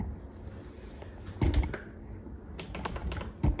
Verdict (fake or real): real